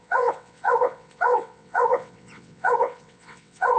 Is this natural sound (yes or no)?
no